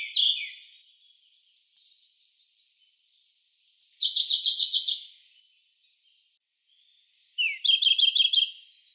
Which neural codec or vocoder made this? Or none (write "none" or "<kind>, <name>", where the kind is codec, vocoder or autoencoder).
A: none